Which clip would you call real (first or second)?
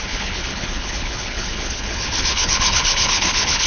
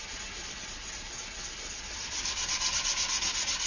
second